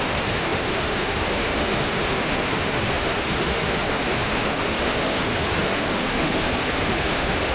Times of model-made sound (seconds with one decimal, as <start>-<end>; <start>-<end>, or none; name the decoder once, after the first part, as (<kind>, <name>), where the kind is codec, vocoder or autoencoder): 0.0-7.5 (autoencoder, DAC-VAE)